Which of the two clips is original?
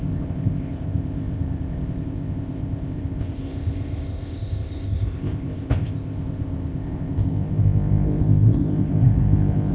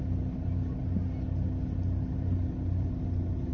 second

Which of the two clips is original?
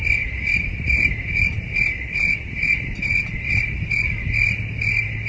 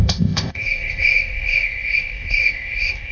first